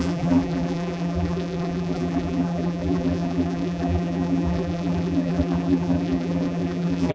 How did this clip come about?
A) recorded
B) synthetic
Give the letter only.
B